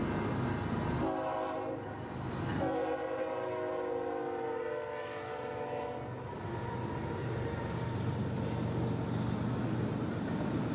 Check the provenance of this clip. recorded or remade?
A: recorded